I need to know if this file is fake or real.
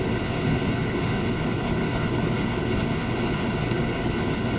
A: fake